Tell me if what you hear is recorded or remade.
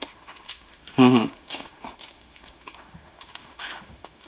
remade